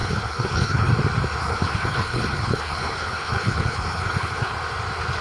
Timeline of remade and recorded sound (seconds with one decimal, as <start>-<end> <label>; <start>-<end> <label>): 0.0-0.9 remade; 0.9-1.4 recorded; 1.4-4.5 remade; 4.5-5.2 recorded